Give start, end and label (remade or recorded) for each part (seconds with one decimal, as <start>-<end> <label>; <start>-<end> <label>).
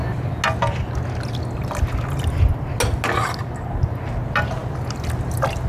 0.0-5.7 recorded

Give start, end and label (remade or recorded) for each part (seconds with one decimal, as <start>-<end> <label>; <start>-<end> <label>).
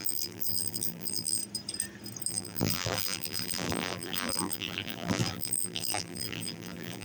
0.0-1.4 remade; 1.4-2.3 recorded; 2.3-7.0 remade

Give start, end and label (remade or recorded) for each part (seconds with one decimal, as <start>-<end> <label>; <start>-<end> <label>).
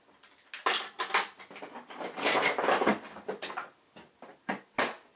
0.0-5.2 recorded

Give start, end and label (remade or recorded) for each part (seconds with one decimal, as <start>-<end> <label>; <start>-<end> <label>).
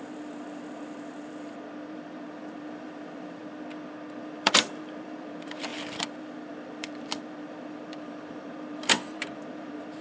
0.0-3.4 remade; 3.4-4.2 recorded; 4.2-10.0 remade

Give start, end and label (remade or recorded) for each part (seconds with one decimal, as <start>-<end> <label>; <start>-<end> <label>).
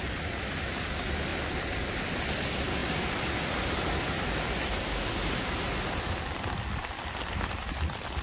0.0-1.3 recorded; 1.3-2.1 remade; 2.1-2.8 recorded; 2.8-6.9 remade; 6.9-8.2 recorded